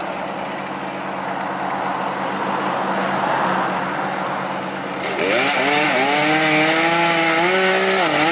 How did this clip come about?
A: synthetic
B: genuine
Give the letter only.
B